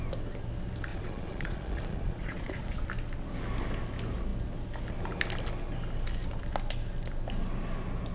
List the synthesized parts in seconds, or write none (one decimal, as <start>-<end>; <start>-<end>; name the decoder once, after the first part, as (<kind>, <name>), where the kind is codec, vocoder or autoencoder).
0.9-2.9 (vocoder, Vocos)

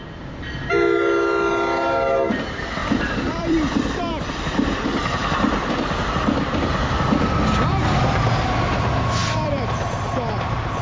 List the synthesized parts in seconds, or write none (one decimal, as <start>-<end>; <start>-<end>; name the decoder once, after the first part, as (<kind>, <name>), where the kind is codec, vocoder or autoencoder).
2.8-4.1 (vocoder, BigVGAN v2); 9.2-9.8

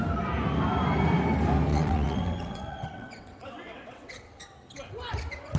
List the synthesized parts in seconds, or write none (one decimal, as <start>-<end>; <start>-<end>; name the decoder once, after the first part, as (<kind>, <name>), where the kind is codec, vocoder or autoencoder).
1.7-4.4 (vocoder, WaveNeXt)